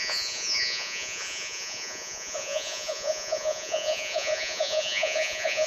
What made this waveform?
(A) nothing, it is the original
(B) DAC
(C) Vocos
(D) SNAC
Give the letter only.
C